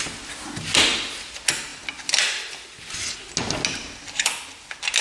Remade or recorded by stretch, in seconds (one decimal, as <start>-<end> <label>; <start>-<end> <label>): 0.0-5.0 recorded